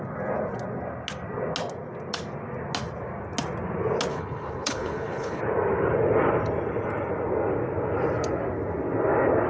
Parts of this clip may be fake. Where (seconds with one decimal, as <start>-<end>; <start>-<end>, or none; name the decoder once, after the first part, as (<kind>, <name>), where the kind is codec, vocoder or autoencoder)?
4.1-5.4 (codec, HILCodec)

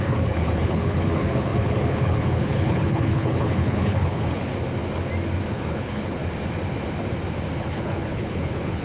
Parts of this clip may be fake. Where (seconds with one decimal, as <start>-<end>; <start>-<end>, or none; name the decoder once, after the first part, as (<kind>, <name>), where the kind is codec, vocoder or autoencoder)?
0.0-4.5 (codec, HILCodec); 5.5-6.2; 7.6-8.8

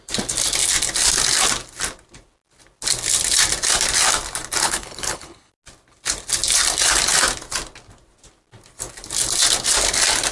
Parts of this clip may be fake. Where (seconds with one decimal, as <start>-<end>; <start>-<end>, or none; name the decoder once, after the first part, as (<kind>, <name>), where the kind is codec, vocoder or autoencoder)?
4.6-5.5 (codec, HILCodec)

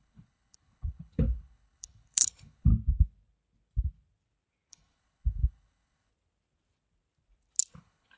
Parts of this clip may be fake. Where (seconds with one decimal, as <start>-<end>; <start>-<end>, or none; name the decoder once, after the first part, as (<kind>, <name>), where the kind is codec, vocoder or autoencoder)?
0.0-2.7 (codec, HILCodec); 4.7-6.1; 7.7-8.2

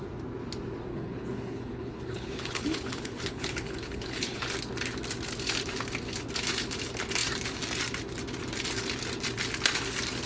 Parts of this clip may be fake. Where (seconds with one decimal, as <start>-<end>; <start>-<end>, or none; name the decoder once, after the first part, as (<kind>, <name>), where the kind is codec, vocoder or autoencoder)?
0.9-4.4 (codec, HILCodec)

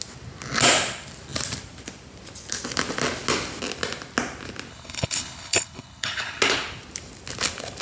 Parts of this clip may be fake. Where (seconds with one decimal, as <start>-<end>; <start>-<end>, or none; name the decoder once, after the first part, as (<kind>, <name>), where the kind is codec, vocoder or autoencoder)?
4.7-6.4 (codec, HILCodec)